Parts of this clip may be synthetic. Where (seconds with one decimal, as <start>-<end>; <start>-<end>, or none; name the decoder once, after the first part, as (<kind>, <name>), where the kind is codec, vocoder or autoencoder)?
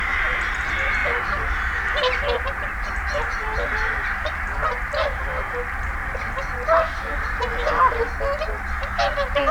0.0-7.5 (vocoder, BigVGAN v2); 8.8-9.5